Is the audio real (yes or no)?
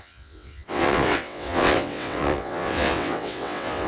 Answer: no